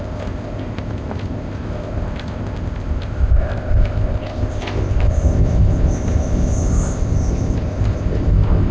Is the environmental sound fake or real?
fake